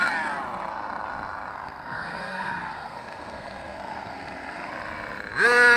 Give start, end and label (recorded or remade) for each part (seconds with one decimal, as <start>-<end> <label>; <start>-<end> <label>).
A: 0.0-1.5 recorded; 1.5-4.7 remade; 4.7-5.8 recorded